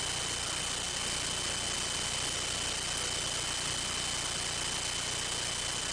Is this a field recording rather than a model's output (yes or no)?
yes